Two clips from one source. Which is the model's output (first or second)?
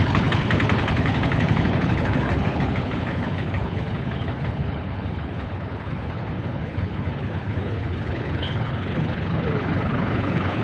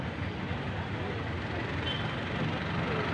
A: first